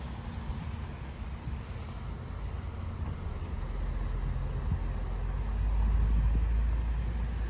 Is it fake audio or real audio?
real